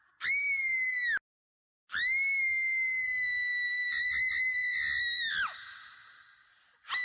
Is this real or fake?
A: real